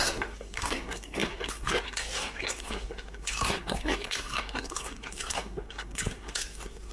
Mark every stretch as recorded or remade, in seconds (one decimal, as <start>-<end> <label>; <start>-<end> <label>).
0.0-6.9 remade